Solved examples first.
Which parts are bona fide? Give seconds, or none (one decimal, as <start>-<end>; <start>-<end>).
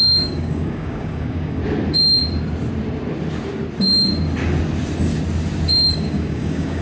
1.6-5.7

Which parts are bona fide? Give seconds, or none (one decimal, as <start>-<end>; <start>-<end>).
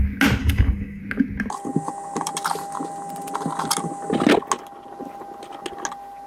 0.0-0.4; 1.0-6.3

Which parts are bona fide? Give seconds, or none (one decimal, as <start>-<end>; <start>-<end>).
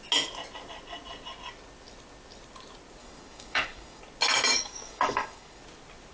0.0-3.0; 4.0-4.5; 5.6-6.1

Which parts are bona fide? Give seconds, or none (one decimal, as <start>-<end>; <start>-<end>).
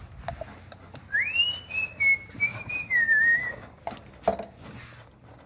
0.0-3.1; 3.8-5.5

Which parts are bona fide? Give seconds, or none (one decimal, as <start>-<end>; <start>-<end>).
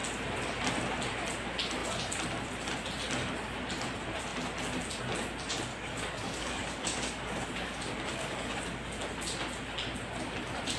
0.0-5.7; 9.0-10.8